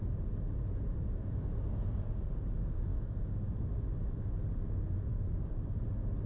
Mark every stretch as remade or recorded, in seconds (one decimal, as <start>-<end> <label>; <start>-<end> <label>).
0.0-5.1 recorded; 5.1-5.8 remade; 5.8-6.3 recorded